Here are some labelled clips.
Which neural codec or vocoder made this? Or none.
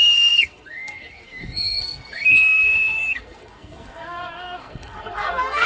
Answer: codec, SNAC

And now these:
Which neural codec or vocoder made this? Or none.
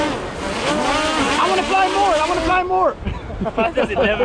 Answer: none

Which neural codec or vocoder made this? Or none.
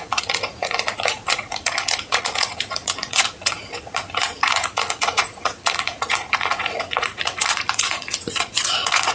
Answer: vocoder, Vocos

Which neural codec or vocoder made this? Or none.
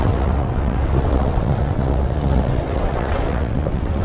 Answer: vocoder, WaveNeXt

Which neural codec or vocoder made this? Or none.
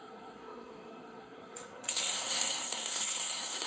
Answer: codec, SNAC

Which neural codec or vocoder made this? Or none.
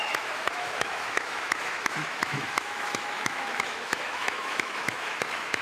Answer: autoencoder, DAC-VAE